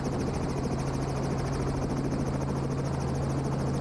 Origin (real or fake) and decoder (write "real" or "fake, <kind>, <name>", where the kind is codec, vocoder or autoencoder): real